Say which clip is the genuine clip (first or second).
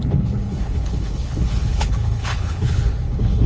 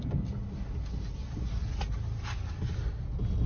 second